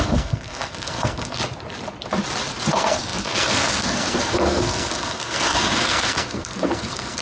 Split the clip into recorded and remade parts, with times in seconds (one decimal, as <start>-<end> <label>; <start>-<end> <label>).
0.0-1.4 remade; 1.4-2.7 recorded; 2.7-7.2 remade